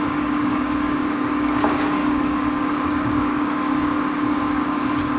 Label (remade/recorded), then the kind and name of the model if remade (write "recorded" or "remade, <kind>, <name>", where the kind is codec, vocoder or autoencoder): remade, codec, DAC